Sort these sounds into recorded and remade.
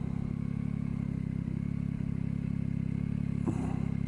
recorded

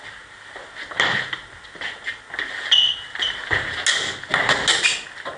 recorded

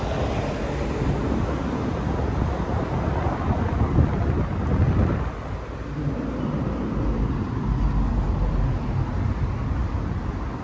recorded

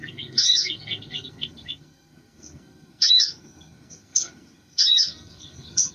remade